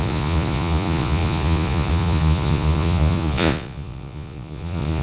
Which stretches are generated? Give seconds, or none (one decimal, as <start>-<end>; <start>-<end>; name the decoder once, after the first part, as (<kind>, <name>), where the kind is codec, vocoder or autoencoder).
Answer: 0.0-5.0 (vocoder, Vocos)